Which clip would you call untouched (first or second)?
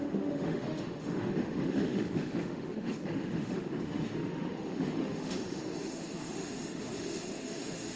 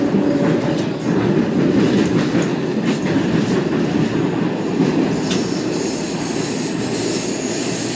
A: second